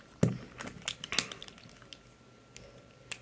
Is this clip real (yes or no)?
yes